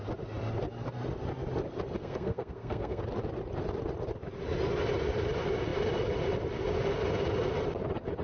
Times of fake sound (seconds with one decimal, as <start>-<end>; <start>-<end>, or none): 2.0-3.0